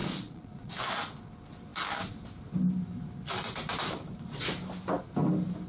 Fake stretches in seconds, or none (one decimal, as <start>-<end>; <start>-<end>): 0.0-0.7